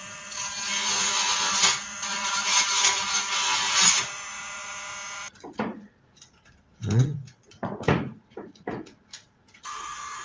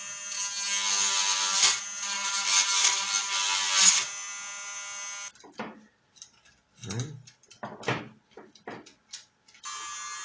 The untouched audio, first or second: second